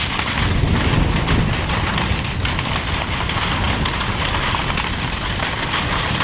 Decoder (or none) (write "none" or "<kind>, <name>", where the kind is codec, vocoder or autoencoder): none